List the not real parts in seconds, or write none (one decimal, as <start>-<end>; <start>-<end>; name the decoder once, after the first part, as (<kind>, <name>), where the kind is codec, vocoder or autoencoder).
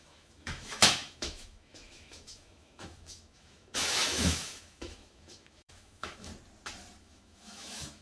0.0-6.3 (autoencoder, DAC-VAE); 7.0-8.0